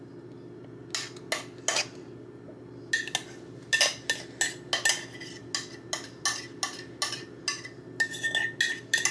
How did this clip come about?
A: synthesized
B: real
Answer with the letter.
B